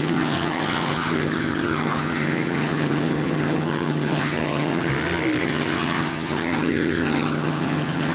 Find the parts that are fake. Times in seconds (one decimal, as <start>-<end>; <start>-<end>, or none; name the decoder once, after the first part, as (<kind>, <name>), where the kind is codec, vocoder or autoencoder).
0.0-4.9 (vocoder, HiFi-GAN); 5.4-8.1